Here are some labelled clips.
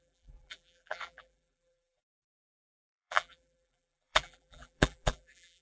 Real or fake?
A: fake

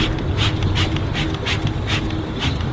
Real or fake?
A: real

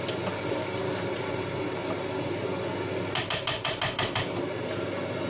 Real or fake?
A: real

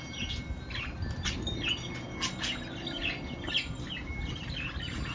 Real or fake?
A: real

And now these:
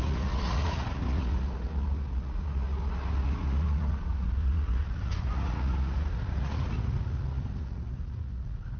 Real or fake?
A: fake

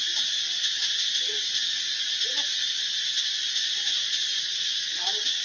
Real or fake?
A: real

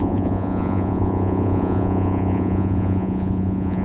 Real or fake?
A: fake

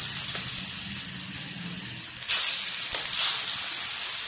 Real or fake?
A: real